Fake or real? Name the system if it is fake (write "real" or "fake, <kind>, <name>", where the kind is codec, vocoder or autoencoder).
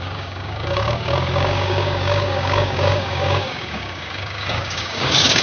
fake, codec, DAC